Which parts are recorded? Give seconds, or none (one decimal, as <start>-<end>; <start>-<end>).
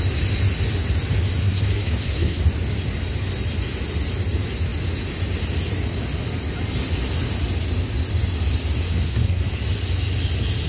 0.0-1.4; 2.4-8.8; 9.4-10.7